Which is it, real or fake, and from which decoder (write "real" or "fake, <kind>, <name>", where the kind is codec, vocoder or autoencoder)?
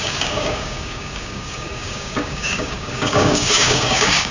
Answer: fake, codec, DAC